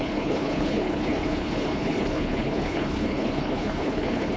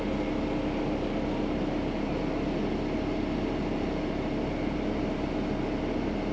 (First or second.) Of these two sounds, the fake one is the first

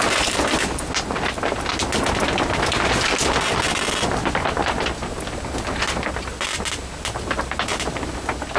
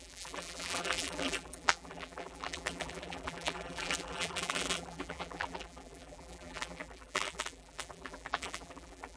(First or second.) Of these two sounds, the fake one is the second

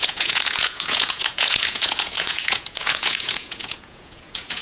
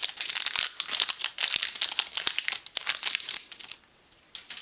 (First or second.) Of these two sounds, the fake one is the first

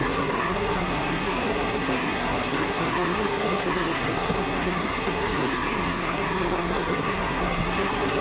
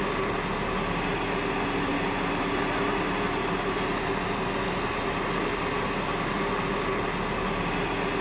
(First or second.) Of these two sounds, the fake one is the first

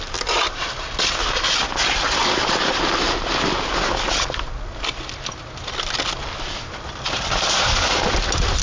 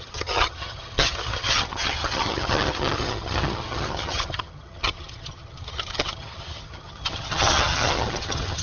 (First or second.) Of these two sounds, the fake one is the second